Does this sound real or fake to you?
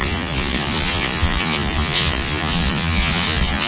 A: fake